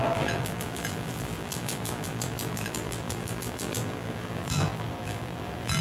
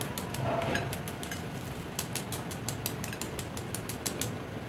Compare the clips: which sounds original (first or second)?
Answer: second